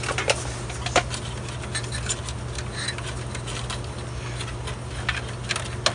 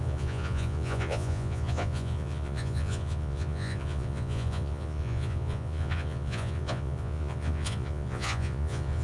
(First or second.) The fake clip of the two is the second